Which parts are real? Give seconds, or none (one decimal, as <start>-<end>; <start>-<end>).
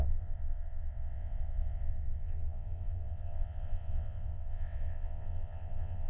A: none